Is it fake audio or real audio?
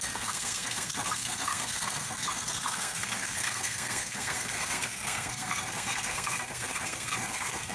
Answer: fake